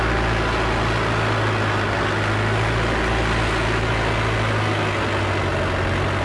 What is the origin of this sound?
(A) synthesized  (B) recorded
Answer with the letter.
B